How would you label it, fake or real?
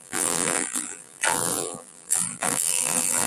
fake